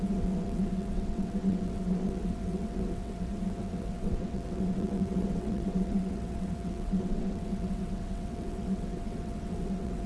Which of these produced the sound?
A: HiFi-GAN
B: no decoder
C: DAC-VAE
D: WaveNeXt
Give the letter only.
D